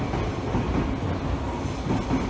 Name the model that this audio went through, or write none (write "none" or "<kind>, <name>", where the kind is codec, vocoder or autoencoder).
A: none